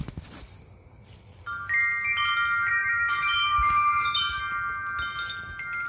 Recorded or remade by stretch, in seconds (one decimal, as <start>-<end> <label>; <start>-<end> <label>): 0.0-2.7 recorded; 2.7-4.4 remade; 4.4-5.9 recorded